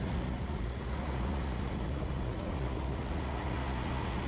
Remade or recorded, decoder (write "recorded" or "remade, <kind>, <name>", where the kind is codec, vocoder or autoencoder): remade, vocoder, Vocos